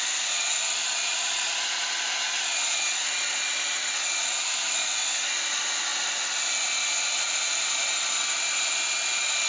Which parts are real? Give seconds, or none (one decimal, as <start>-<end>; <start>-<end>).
0.0-9.5